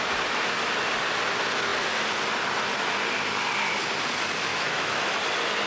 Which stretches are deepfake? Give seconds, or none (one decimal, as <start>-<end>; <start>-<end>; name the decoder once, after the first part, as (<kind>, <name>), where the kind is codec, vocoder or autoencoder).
4.5-5.1 (autoencoder, DAC-VAE)